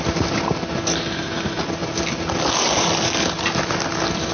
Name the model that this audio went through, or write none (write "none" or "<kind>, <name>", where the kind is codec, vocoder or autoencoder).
none